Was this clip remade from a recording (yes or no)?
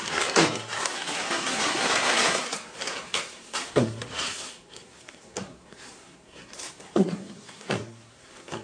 yes